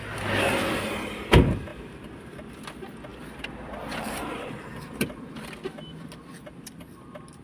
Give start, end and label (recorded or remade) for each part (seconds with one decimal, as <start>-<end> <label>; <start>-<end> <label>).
0.0-1.7 recorded; 1.7-2.5 remade; 2.5-3.1 recorded; 3.1-5.0 remade; 5.0-7.4 recorded